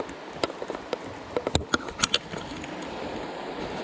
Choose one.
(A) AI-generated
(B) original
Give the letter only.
B